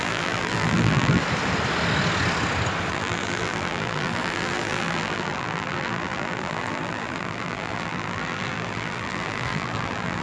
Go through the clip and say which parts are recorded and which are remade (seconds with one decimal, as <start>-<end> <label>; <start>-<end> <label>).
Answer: 0.0-1.2 remade; 1.2-2.9 recorded; 2.9-10.2 remade